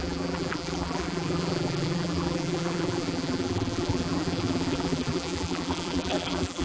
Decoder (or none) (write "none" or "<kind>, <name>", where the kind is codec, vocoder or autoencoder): vocoder, BigVGAN v2